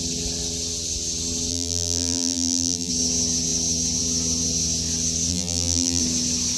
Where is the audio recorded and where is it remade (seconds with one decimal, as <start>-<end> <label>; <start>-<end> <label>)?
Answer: 0.0-1.5 recorded; 1.5-2.9 remade; 2.9-5.3 recorded; 5.3-6.0 remade; 6.0-6.6 recorded